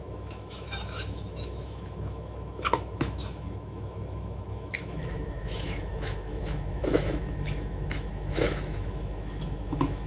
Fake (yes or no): yes